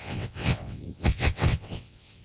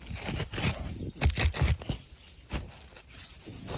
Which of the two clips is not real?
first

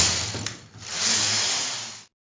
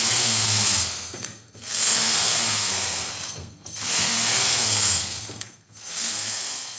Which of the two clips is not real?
second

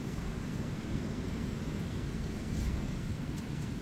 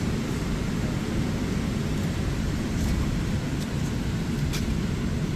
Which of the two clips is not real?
first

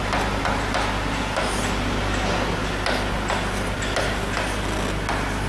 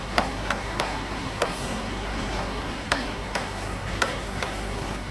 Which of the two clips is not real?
second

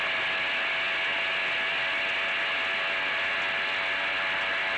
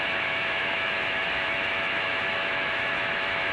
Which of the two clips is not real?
second